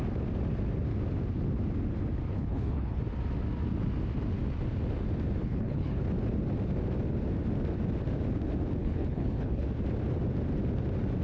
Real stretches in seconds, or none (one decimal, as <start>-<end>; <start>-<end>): 0.0-2.3; 3.0-5.4; 6.0-8.8; 9.7-11.2